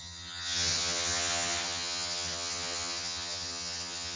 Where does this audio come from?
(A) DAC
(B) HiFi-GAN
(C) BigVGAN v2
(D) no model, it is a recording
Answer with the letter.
B